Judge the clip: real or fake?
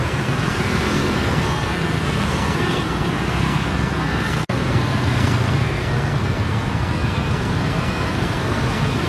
fake